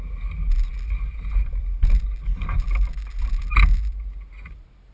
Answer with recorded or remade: recorded